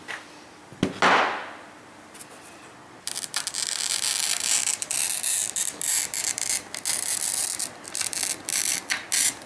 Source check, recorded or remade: recorded